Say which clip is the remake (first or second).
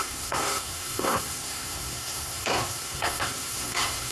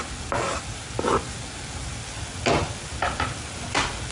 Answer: first